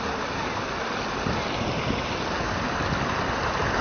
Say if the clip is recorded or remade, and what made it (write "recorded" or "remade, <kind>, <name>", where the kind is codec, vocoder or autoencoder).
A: recorded